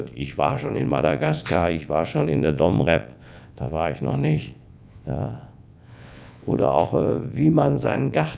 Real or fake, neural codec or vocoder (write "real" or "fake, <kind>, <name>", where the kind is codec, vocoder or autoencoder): fake, vocoder, Vocos